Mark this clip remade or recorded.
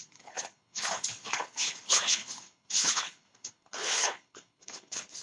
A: remade